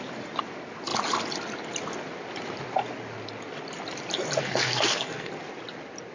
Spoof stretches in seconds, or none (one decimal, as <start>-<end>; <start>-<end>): 4.4-5.3